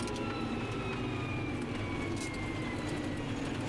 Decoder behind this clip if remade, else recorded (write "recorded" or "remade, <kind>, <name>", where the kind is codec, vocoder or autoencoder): recorded